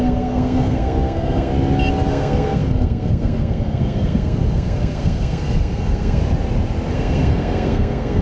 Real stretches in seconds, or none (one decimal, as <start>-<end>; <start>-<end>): 1.5-2.1; 6.2-6.9